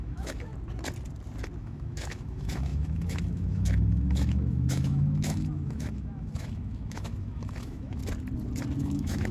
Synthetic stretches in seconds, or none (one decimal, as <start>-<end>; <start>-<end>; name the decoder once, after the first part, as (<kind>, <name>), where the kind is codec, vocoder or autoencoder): 0.0-0.5 (autoencoder, DAC-VAE); 1.6-8.0; 8.8-9.3